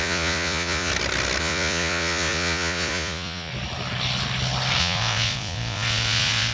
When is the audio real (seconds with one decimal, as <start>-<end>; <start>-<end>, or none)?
0.9-1.4; 3.5-4.8